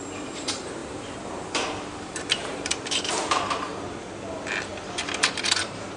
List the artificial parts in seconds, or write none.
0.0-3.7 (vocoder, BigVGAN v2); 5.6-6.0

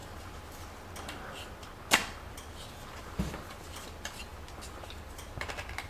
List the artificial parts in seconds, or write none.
none